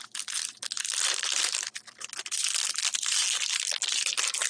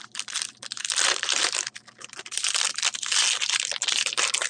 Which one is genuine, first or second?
first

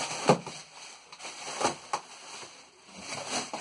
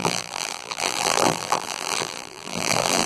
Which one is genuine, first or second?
first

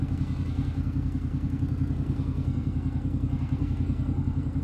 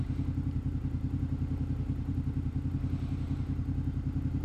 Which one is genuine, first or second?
second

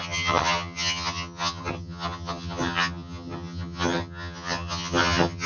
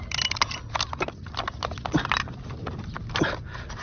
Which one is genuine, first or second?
second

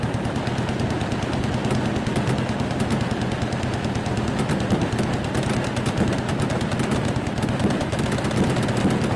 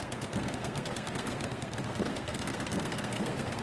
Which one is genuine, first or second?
first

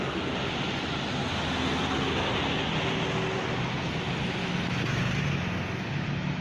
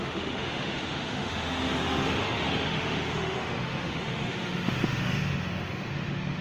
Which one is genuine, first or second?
first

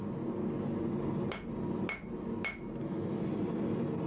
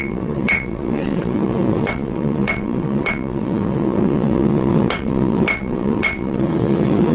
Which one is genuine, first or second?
first